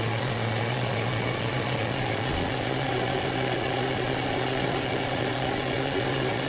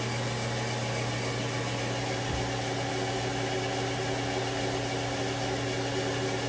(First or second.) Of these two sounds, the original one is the second